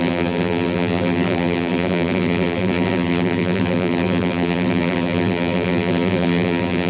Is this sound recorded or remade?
remade